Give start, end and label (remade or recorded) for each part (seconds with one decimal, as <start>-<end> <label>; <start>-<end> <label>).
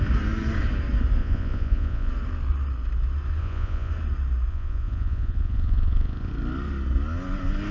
0.0-1.2 recorded; 1.2-2.1 remade; 2.1-3.4 recorded; 3.4-3.9 remade; 3.9-4.5 recorded; 4.5-6.3 remade; 6.3-7.7 recorded